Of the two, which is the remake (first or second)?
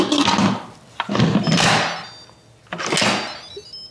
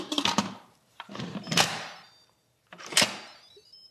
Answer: second